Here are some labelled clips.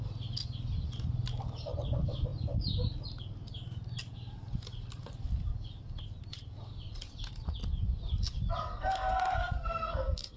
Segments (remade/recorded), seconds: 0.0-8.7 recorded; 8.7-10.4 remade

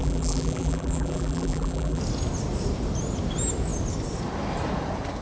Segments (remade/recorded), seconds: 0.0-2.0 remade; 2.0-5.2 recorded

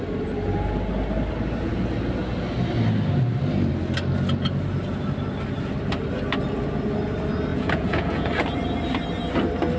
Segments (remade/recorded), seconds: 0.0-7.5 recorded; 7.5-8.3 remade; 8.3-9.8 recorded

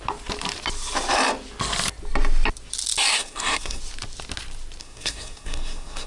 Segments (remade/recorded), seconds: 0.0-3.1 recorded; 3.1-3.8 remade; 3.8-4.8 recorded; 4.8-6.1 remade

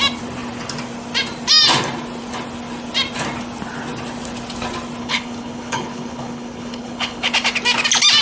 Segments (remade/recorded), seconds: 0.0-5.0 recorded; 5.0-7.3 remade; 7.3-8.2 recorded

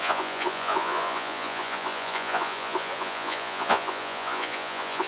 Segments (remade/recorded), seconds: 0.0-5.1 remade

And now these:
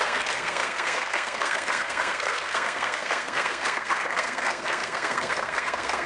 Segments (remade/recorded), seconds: 0.0-6.1 remade

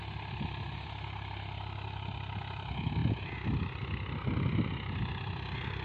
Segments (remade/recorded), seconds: 0.0-5.8 recorded